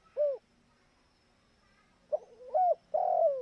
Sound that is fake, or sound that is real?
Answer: real